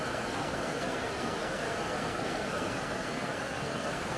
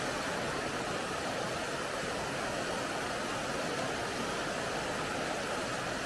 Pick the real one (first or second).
second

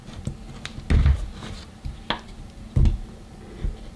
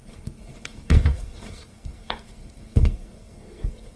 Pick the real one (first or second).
first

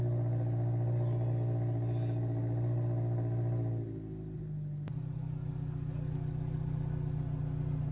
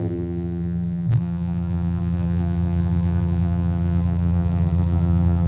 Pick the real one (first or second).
first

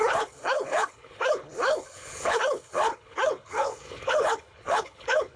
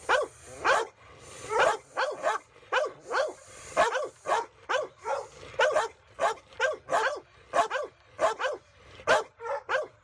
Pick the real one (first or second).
second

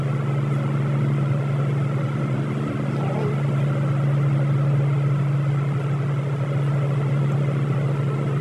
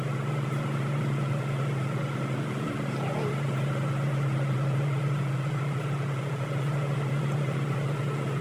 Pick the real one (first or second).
first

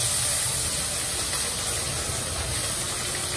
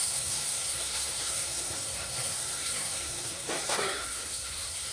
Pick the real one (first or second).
first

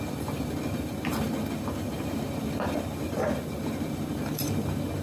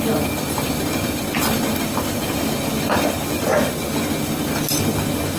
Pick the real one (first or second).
second